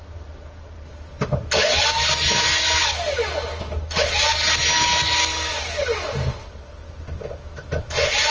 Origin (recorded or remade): recorded